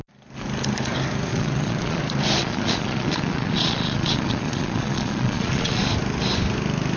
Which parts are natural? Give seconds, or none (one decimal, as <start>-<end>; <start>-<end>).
0.0-1.3; 2.0-2.4; 5.8-7.0